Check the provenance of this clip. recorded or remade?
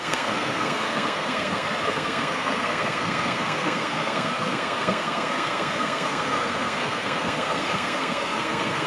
remade